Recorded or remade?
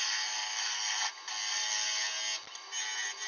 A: recorded